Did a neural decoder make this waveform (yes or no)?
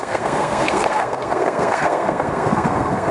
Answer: yes